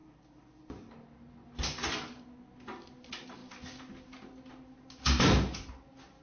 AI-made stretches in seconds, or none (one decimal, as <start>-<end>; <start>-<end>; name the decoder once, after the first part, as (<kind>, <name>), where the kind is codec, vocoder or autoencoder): none